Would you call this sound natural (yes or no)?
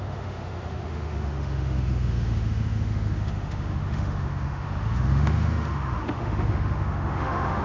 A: no